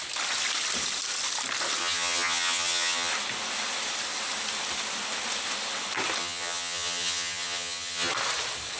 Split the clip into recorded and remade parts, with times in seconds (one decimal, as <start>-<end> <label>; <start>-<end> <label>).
0.0-1.8 recorded; 1.8-3.1 remade; 3.1-6.2 recorded; 6.2-8.1 remade; 8.1-8.8 recorded